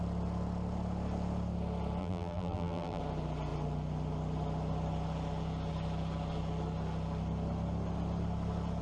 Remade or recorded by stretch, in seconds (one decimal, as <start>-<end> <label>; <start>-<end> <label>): 0.0-2.0 recorded; 2.0-3.0 remade; 3.0-8.8 recorded